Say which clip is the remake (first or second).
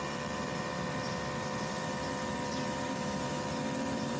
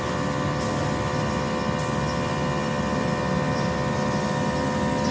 first